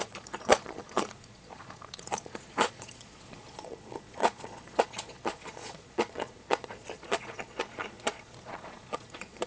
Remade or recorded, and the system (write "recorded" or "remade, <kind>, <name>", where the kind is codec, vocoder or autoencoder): remade, vocoder, Vocos